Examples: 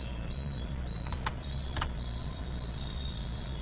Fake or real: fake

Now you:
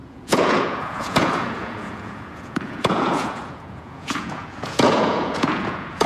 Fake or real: fake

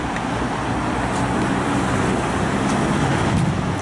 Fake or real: real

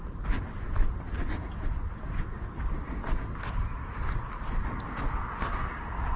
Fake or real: real